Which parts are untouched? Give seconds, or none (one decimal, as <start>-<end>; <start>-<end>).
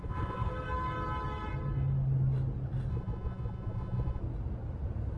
0.5-2.9; 4.2-5.2